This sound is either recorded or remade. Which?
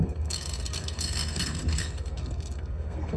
remade